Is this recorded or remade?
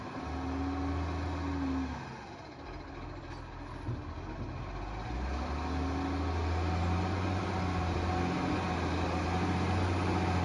recorded